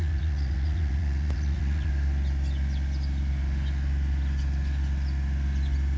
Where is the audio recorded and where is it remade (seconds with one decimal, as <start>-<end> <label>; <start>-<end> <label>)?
0.0-1.9 remade; 1.9-6.0 recorded